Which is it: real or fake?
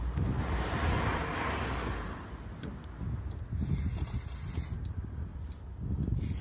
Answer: real